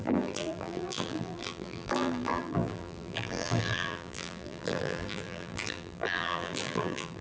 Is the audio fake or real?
fake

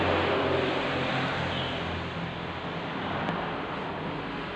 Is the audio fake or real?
real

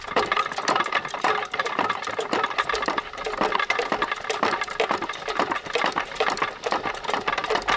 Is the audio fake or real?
fake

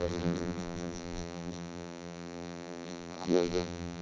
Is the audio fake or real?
fake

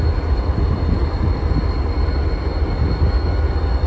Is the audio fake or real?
real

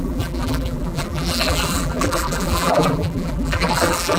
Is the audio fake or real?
fake